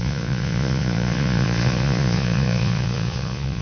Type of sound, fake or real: fake